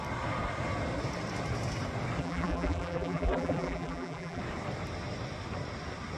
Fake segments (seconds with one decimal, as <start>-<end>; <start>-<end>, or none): 2.2-4.4